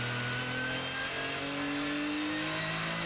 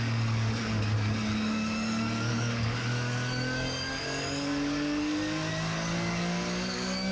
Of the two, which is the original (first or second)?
first